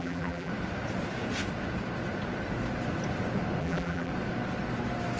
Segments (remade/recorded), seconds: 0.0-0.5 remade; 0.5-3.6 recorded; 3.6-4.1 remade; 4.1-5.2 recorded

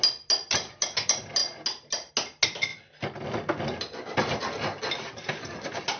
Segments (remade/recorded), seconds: 0.0-6.0 recorded